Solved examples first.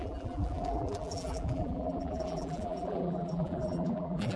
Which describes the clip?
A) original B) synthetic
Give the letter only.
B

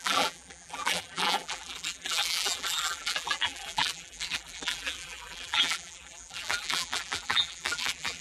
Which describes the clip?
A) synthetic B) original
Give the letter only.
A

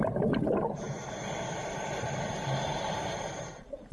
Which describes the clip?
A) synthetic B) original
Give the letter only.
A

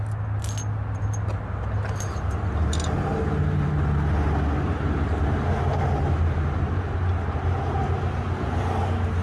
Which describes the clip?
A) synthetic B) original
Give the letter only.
B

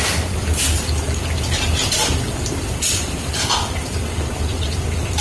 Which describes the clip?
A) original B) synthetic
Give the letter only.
B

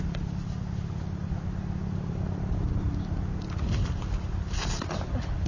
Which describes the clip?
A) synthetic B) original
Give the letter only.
B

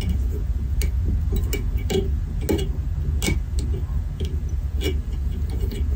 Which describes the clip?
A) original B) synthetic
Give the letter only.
A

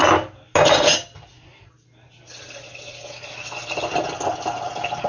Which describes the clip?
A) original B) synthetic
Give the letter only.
A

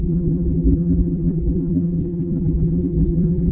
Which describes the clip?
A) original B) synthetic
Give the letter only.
B